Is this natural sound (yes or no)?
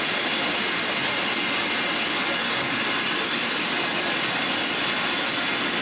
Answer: yes